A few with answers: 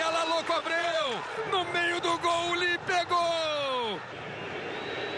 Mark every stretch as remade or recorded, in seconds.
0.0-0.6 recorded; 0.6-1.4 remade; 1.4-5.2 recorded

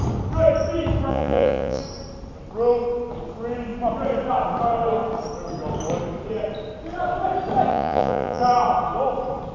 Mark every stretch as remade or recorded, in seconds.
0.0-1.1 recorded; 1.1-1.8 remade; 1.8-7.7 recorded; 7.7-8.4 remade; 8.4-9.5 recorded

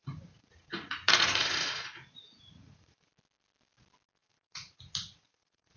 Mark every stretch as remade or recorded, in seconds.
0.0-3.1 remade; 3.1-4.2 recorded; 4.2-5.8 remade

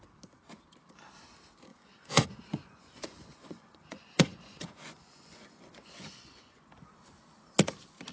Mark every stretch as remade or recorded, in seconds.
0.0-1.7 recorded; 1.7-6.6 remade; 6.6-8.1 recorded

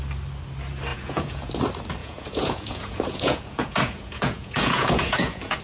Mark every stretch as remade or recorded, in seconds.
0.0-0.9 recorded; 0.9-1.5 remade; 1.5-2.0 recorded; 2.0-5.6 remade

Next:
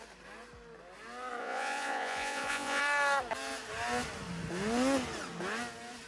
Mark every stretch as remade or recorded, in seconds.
0.0-1.4 recorded; 1.4-2.8 remade; 2.8-6.1 recorded